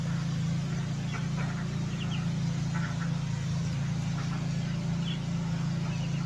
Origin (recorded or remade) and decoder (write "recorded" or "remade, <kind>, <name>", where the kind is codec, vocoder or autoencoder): recorded